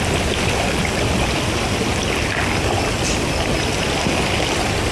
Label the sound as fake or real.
real